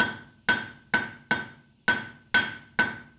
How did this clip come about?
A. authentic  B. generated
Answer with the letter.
A